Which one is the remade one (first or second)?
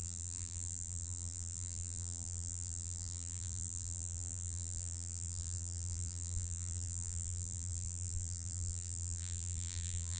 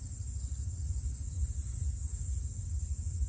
first